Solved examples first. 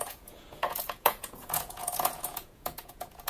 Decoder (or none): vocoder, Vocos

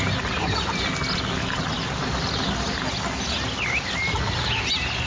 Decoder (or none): none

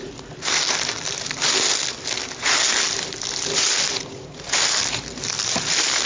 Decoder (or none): none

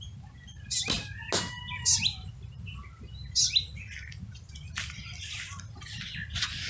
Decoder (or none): none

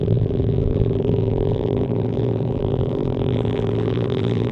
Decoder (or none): vocoder, BigVGAN v2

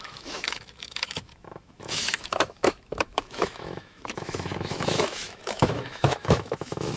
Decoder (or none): autoencoder, DAC-VAE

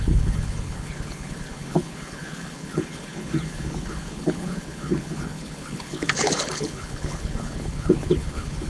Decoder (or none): codec, HILCodec